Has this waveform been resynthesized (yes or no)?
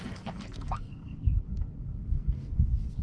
yes